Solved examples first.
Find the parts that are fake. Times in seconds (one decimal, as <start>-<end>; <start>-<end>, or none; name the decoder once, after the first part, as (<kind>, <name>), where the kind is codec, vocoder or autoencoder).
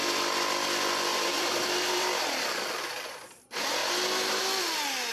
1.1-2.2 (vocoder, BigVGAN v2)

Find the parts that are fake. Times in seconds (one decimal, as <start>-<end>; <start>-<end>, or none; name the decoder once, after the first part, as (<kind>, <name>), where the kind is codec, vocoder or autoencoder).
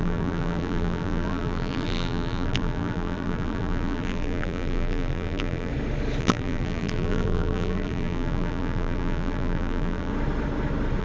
0.0-5.7 (vocoder, BigVGAN v2); 6.2-10.1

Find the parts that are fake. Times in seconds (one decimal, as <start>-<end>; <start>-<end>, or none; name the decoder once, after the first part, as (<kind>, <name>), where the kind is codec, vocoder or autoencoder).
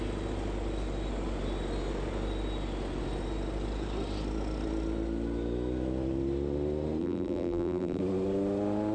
7.0-8.0 (vocoder, BigVGAN v2)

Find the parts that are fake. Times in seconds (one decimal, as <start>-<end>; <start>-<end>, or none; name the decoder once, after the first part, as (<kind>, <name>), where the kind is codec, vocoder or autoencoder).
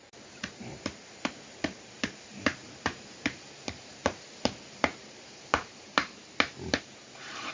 0.0-6.2 (vocoder, BigVGAN v2); 6.8-7.5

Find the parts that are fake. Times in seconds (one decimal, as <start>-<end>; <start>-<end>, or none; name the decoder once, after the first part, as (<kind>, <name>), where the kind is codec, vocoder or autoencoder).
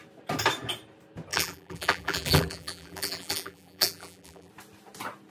1.3-4.5 (vocoder, BigVGAN v2)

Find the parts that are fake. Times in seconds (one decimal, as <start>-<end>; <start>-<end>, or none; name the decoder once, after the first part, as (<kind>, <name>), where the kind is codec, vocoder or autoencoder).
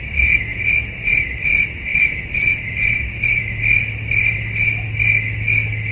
1.9-3.4 (vocoder, BigVGAN v2)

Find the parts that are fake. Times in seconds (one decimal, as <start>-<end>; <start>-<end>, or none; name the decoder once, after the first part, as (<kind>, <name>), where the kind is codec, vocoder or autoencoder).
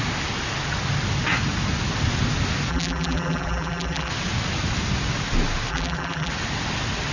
2.7-4.1 (vocoder, BigVGAN v2); 5.7-6.3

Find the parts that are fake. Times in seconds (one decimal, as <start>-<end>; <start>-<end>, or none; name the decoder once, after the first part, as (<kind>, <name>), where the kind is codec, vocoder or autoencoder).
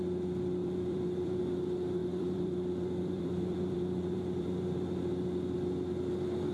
0.6-1.4 (vocoder, BigVGAN v2); 2.0-5.1